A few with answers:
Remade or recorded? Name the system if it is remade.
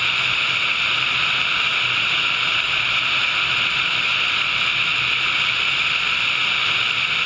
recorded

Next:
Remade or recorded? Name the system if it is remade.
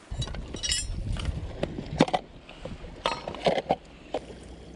recorded